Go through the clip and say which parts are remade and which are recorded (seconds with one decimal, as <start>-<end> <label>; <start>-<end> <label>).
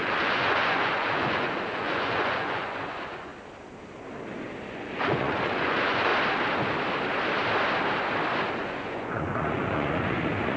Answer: 0.0-3.3 remade; 3.3-4.7 recorded; 4.7-6.1 remade; 6.1-8.5 recorded; 8.5-10.6 remade